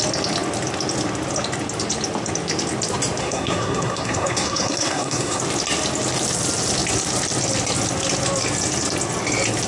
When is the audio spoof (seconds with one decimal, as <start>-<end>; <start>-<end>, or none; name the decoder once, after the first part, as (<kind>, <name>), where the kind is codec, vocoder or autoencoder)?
3.2-5.4 (codec, SNAC)